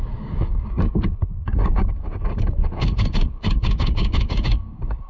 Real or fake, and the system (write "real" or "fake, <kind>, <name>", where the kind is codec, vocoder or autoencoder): fake, codec, DAC